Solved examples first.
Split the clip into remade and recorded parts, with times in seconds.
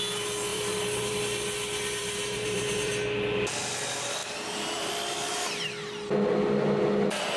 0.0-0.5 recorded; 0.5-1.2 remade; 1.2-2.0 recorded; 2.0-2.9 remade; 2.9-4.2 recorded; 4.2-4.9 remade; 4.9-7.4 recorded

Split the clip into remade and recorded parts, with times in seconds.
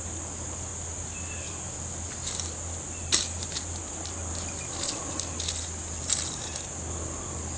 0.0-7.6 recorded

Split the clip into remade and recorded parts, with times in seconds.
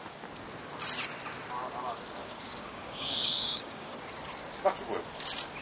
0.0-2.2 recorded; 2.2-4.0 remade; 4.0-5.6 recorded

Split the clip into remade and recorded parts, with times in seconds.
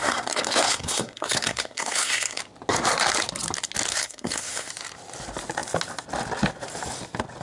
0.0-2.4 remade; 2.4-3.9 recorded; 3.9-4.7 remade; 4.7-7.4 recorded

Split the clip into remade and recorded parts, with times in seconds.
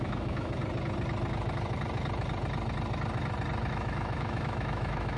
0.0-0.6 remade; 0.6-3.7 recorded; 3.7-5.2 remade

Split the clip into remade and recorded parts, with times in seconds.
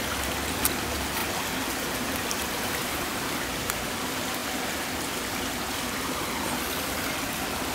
0.0-2.8 recorded; 2.8-3.9 remade; 3.9-7.7 recorded